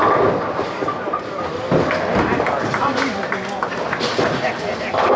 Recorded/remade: recorded